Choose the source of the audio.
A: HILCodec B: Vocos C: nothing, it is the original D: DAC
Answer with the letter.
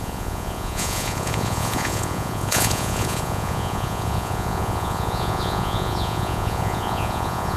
B